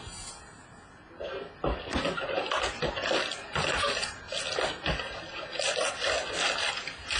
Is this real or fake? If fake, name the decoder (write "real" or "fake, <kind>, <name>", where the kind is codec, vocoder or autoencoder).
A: real